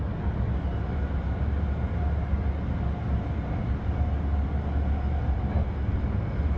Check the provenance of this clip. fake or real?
real